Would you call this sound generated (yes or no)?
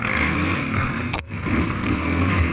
yes